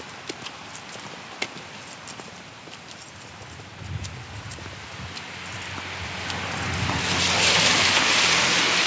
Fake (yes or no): no